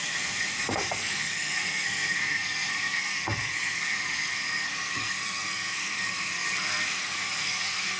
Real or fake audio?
fake